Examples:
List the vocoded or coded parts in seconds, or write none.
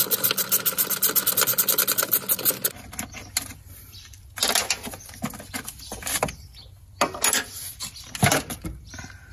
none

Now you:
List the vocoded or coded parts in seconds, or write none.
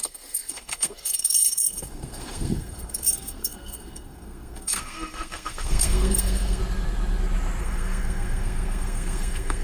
0.0-6.6 (codec, SNAC); 7.6-9.6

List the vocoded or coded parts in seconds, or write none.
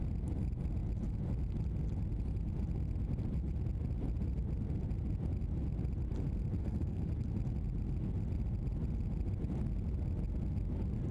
6.6-7.1 (codec, SNAC)